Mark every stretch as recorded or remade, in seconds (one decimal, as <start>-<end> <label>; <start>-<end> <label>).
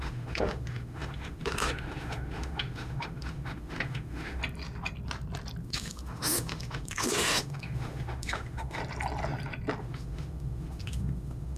0.0-4.4 remade; 4.4-5.6 recorded; 5.6-8.8 remade; 8.8-9.8 recorded; 9.8-11.6 remade